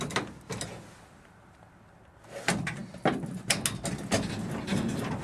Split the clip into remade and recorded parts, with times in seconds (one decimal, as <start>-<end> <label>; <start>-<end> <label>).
0.0-5.2 recorded